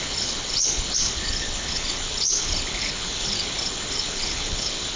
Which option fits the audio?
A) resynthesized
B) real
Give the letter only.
A